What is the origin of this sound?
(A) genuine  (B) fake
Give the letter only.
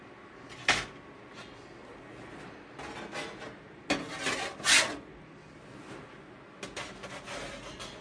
A